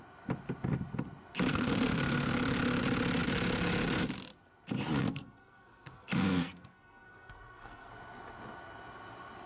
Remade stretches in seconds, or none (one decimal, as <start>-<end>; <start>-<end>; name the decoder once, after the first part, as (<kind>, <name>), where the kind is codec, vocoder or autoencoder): 1.5-2.3 (codec, SNAC); 5.0-7.9